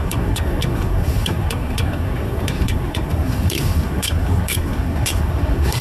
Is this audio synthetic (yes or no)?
yes